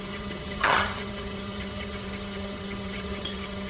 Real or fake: fake